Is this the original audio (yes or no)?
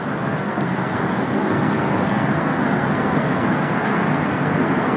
no